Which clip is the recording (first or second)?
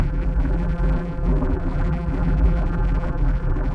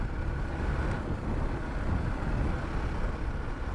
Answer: second